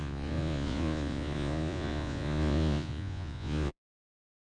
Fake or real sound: fake